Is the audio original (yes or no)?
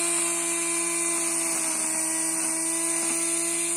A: yes